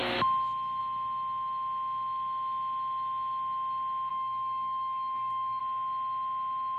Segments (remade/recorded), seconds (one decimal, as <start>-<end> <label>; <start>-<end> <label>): 0.0-4.1 recorded; 4.1-5.6 remade; 5.6-6.8 recorded